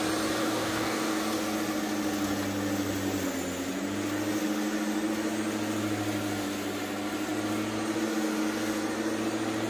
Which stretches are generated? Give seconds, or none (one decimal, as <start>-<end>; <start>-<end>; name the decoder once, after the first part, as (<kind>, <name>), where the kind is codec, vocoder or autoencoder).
0.4-1.2 (codec, DAC)